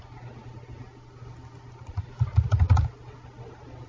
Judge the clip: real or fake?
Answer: real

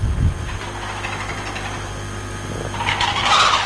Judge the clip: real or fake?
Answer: real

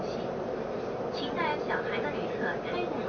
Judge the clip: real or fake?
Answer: real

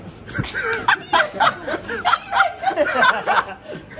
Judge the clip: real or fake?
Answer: real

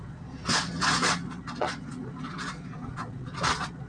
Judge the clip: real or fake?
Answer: fake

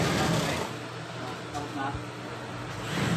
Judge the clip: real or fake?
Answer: real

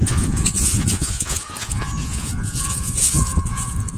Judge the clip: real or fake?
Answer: fake